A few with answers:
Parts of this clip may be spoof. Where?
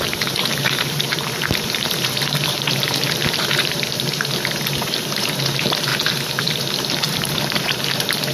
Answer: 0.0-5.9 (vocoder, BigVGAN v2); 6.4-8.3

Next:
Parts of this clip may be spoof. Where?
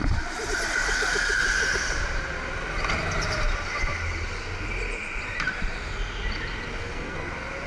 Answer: 6.8-7.3 (codec, SNAC)